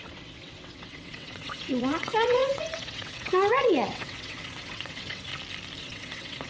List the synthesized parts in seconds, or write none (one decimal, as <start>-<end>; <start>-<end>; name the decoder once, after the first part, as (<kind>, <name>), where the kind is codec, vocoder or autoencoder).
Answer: 0.0-5.3 (vocoder, WaveNeXt); 5.8-6.5